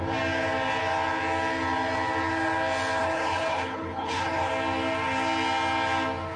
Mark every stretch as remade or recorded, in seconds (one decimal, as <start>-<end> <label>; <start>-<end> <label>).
0.0-3.0 recorded; 3.0-4.5 remade; 4.5-6.4 recorded